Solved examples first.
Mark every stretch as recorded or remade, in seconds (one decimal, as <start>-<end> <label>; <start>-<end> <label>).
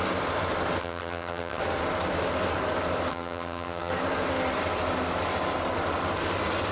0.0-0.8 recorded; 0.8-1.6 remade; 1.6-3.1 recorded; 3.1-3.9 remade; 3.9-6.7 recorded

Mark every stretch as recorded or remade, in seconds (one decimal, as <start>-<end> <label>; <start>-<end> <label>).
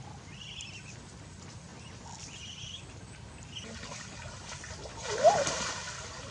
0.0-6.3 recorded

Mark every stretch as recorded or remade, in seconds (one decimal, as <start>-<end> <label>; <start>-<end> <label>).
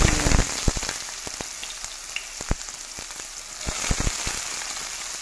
0.0-5.2 recorded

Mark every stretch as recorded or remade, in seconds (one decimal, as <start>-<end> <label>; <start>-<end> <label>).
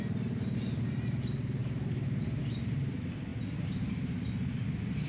0.0-5.1 recorded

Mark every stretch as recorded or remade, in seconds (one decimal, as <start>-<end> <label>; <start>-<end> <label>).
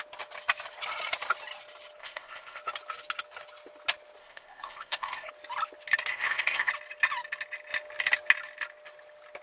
0.0-2.0 recorded; 2.0-2.6 remade; 2.6-4.2 recorded; 4.2-5.3 remade; 5.3-6.1 recorded; 6.1-6.7 remade; 6.7-9.4 recorded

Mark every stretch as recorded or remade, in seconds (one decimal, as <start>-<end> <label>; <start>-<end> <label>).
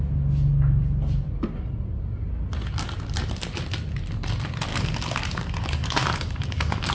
0.0-4.7 recorded; 4.7-6.9 remade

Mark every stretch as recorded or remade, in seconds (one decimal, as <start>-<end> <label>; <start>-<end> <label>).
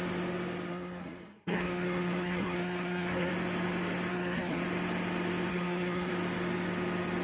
0.0-0.7 recorded; 0.7-3.3 remade; 3.3-4.1 recorded; 4.1-4.6 remade; 4.6-5.5 recorded; 5.5-6.1 remade; 6.1-7.2 recorded